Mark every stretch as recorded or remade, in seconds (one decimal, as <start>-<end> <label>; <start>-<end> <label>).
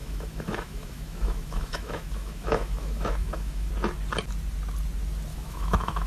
0.0-3.7 remade; 3.7-5.3 recorded; 5.3-6.1 remade